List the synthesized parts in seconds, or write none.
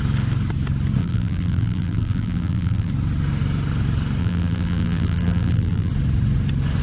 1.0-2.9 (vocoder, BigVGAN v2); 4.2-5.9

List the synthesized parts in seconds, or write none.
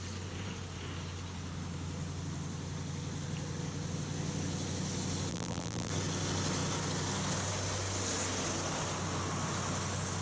5.3-5.9 (vocoder, BigVGAN v2)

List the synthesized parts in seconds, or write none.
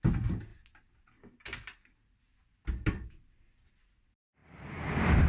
4.4-5.3 (vocoder, BigVGAN v2)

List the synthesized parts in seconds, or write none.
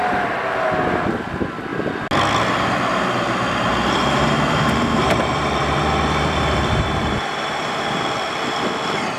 0.0-0.7 (vocoder, BigVGAN v2); 2.9-8.0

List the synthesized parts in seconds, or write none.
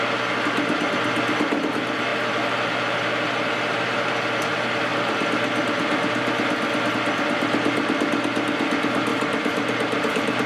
9.1-10.5 (vocoder, BigVGAN v2)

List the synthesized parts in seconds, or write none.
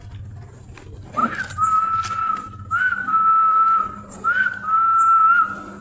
3.1-4.5 (vocoder, BigVGAN v2)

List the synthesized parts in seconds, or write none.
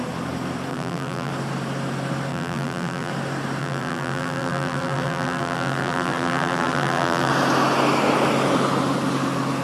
0.7-1.3 (vocoder, BigVGAN v2); 2.3-3.1; 3.6-7.3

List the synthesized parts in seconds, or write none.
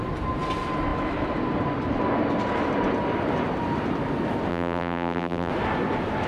4.5-5.5 (vocoder, BigVGAN v2)